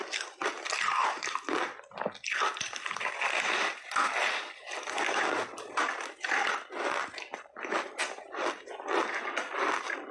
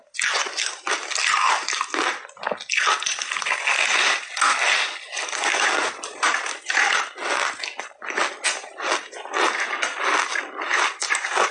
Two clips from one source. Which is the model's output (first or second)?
first